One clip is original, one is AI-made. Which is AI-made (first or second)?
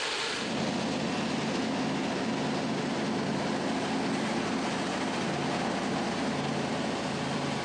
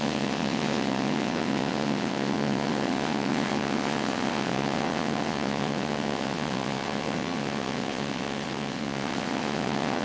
second